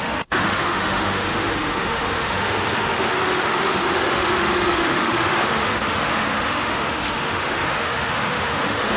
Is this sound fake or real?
fake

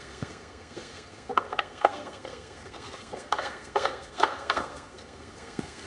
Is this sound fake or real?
fake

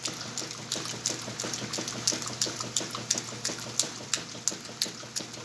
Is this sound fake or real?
real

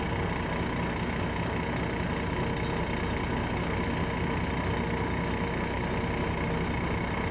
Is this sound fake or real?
real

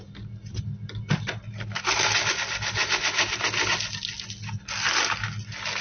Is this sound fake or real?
real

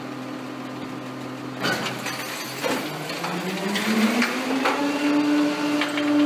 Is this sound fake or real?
real